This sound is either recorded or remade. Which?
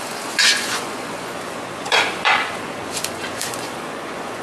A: remade